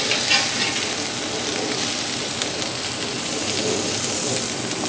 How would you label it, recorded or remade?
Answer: recorded